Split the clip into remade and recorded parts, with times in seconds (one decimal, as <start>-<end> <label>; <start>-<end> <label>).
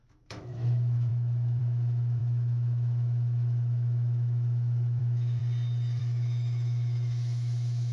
0.0-5.4 remade; 5.4-6.0 recorded; 6.0-7.9 remade